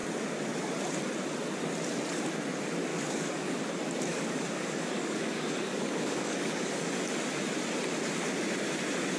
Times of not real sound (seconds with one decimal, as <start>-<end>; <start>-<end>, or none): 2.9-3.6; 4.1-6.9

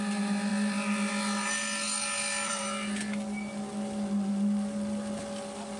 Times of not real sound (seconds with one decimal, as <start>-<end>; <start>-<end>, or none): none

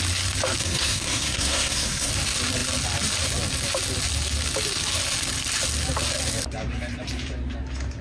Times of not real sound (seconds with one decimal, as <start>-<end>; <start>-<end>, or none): 0.6-2.1

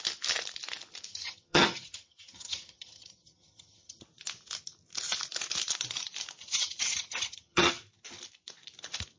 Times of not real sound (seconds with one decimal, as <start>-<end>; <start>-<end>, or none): 1.1-4.0; 6.4-7.8

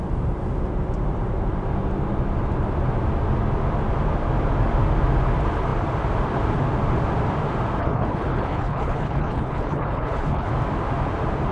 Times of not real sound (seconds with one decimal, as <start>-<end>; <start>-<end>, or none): 7.8-10.5

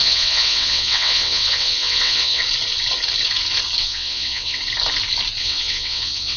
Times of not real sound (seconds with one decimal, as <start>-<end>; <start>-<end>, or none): 0.0-2.4; 3.8-4.6; 5.4-6.4